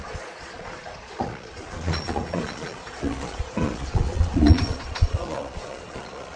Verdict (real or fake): fake